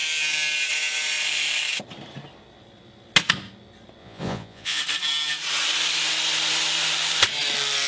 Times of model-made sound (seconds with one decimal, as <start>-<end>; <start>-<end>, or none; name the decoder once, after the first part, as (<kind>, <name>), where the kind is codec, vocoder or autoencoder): 4.0-4.8 (vocoder, Vocos)